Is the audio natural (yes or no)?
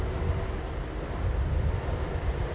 yes